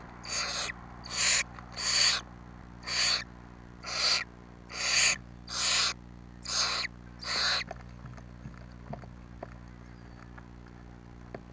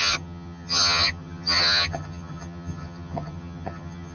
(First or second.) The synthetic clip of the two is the second